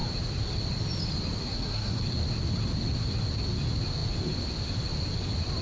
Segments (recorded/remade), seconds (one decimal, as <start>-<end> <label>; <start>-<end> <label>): 0.0-1.4 recorded; 1.4-2.0 remade; 2.0-5.6 recorded